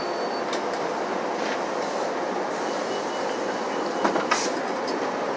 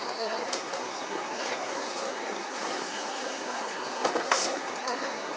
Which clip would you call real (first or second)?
first